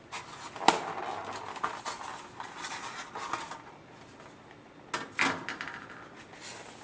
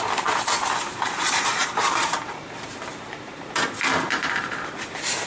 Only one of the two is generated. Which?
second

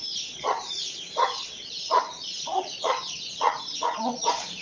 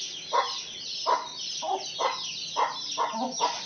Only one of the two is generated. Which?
first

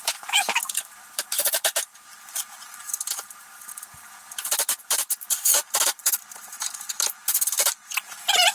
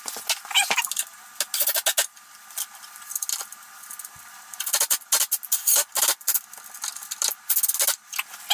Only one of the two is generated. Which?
first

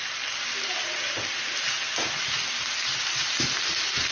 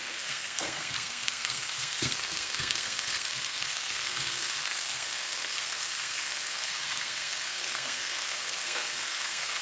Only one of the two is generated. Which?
second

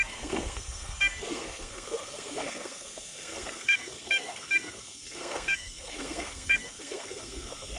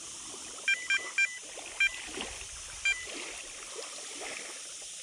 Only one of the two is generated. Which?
first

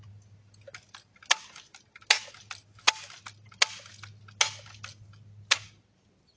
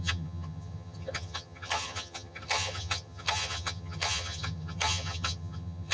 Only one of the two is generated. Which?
second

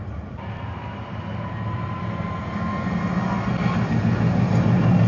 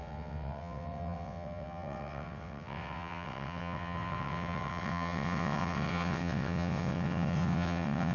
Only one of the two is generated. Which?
second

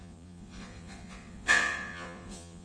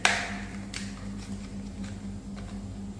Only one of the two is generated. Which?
first